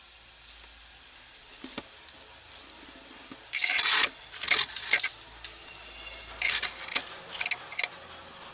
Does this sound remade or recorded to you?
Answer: recorded